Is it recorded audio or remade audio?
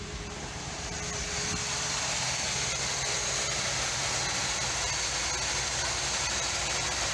recorded